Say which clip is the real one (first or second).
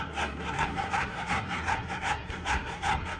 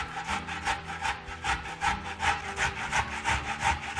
second